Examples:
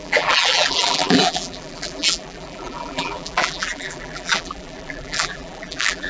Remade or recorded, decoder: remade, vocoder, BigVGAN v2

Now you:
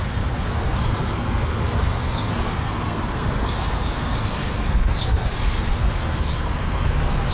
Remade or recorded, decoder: remade, codec, SNAC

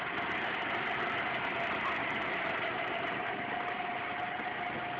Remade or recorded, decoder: recorded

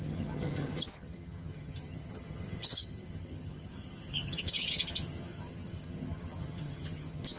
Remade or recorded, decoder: remade, vocoder, HiFi-GAN